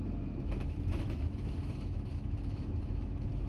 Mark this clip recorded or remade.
remade